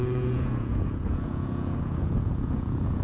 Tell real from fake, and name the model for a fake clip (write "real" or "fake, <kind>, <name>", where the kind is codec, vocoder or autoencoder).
fake, vocoder, Vocos